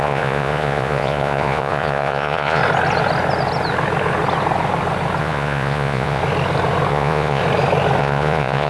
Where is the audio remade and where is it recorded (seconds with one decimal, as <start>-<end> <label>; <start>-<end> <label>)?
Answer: 0.0-2.6 remade; 2.6-5.2 recorded; 5.2-6.2 remade; 6.2-6.9 recorded; 6.9-7.4 remade; 7.4-8.0 recorded; 8.0-8.7 remade